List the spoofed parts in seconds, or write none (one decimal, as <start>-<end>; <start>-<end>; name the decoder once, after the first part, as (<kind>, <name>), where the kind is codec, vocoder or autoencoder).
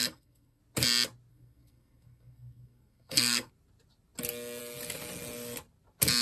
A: 0.0-0.6 (codec, SNAC); 1.3-3.5